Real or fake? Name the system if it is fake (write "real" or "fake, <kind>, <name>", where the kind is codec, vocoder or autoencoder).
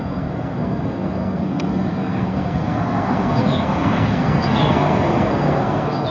fake, codec, SNAC